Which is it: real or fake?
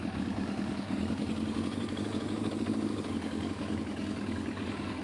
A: fake